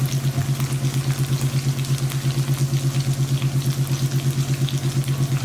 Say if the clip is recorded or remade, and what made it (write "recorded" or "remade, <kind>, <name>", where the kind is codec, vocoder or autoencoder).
recorded